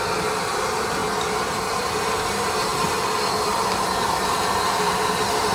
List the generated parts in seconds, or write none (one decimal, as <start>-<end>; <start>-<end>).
2.7-4.3